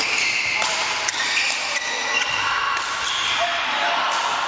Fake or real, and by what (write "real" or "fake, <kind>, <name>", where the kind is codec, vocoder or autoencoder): real